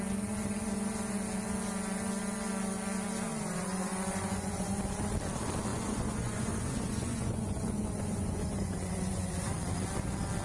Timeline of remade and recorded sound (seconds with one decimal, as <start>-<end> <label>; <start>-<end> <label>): 0.0-3.3 recorded; 3.3-4.8 remade; 4.8-5.7 recorded; 5.7-9.5 remade; 9.5-10.4 recorded